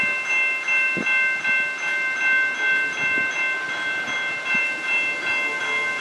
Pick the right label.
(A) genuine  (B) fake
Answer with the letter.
A